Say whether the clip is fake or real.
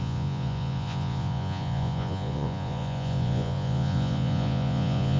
fake